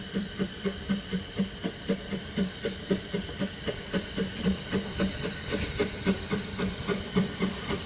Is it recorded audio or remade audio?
remade